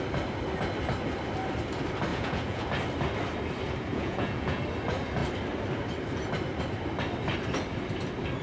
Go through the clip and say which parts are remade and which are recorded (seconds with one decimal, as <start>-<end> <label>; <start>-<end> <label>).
0.0-2.1 recorded; 2.1-2.7 remade; 2.7-3.9 recorded; 3.9-4.6 remade; 4.6-8.4 recorded